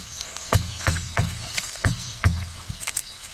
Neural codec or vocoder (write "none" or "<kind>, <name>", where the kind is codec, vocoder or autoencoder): codec, SNAC